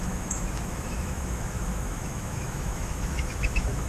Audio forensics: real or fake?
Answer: fake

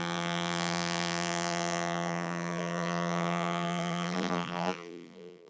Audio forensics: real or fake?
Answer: fake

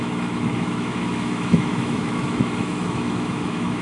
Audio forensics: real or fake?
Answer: fake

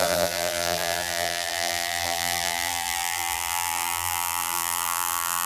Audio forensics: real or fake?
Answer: fake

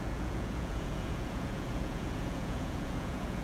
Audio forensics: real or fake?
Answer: fake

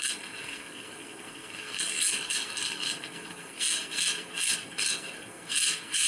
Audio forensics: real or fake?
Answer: fake